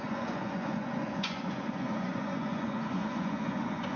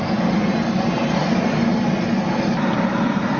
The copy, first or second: first